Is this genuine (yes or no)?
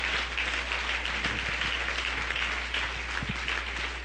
yes